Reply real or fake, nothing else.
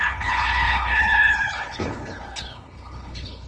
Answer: fake